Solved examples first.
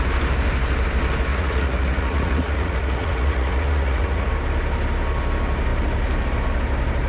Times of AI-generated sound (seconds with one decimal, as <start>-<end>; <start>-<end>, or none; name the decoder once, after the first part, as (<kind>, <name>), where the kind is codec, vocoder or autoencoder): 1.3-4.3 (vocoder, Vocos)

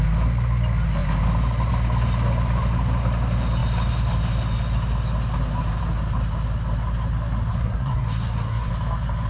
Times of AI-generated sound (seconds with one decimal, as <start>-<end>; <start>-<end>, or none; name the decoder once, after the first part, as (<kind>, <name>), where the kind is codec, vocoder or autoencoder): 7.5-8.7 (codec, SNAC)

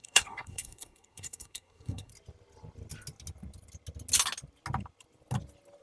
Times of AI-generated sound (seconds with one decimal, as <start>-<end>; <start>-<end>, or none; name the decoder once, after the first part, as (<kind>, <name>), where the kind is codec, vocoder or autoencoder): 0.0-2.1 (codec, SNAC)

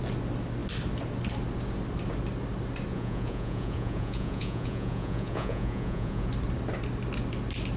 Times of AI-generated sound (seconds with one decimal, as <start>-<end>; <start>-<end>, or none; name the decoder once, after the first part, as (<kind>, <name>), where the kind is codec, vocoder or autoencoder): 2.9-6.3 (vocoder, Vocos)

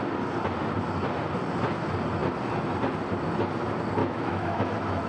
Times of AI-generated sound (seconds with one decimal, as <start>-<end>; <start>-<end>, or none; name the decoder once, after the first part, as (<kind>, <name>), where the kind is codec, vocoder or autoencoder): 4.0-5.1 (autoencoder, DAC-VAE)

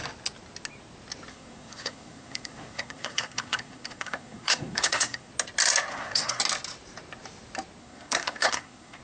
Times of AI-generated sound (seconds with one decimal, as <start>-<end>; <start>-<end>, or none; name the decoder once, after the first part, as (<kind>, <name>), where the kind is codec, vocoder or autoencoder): 1.3-5.3 (codec, SNAC); 5.9-6.4; 7.8-9.0

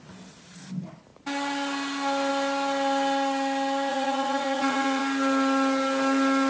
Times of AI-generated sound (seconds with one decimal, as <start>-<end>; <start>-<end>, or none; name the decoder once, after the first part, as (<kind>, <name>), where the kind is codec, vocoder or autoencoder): 3.9-5.0 (vocoder, Vocos)

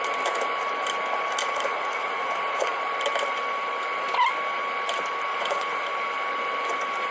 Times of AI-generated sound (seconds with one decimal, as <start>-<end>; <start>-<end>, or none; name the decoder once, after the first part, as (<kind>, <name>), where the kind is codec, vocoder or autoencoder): 1.4-2.8 (vocoder, Vocos); 5.3-5.9